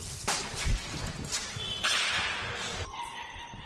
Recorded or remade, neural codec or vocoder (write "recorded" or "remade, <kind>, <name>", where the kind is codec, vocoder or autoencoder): recorded